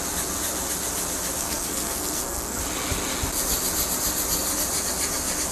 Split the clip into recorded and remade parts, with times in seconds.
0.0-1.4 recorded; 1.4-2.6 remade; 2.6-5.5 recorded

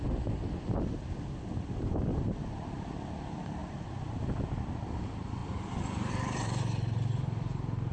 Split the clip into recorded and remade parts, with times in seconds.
0.0-7.9 recorded

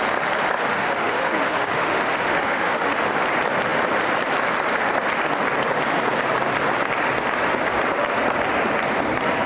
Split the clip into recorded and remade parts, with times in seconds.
0.0-0.7 recorded; 0.7-3.1 remade; 3.1-9.5 recorded

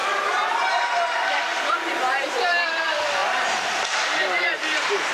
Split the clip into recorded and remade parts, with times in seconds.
0.0-0.9 recorded; 0.9-1.5 remade; 1.5-2.2 recorded; 2.2-3.2 remade; 3.2-4.4 recorded; 4.4-5.1 remade

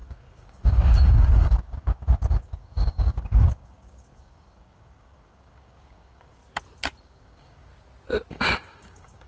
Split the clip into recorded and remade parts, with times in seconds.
0.0-6.4 remade; 6.4-7.0 recorded; 7.0-7.7 remade; 7.7-8.3 recorded; 8.3-9.3 remade

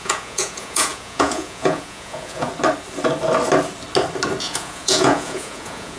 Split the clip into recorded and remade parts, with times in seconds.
0.0-2.5 remade; 2.5-4.4 recorded; 4.4-6.0 remade